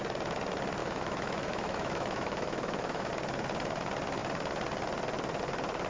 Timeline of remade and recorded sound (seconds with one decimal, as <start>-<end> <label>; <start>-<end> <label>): 0.0-0.8 recorded; 0.8-3.1 remade; 3.1-5.9 recorded